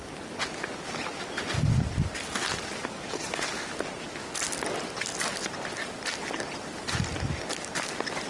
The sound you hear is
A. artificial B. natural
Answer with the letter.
B